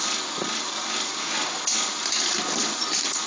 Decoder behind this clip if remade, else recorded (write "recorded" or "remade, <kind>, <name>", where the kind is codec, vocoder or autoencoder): recorded